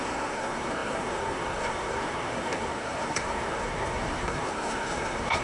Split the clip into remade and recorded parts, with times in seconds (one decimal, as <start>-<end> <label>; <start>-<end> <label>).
0.0-5.4 remade